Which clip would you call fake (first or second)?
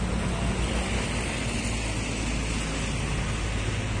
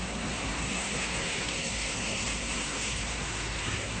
second